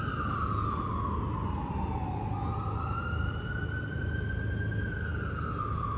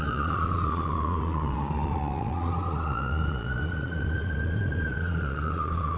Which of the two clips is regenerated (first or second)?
second